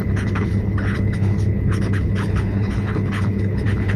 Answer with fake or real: fake